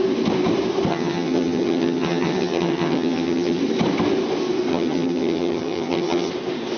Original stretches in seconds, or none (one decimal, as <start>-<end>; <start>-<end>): 0.0-0.9; 3.6-4.7; 6.3-6.8